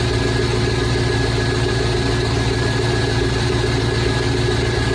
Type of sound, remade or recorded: recorded